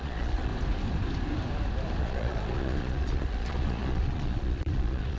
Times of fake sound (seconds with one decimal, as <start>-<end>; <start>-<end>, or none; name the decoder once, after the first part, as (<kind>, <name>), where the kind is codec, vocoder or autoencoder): 0.0-0.5 (vocoder, Vocos); 2.0-5.2